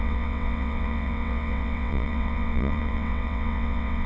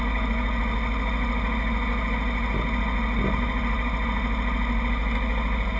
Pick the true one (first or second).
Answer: second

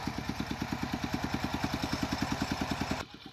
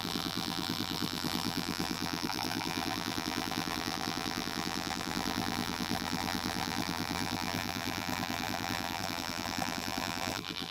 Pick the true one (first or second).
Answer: first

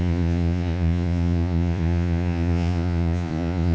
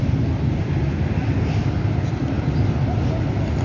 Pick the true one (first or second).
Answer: second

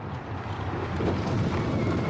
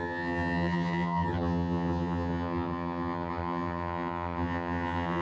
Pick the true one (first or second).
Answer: first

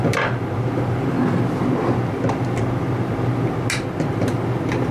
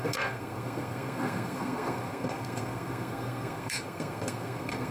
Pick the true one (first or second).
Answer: first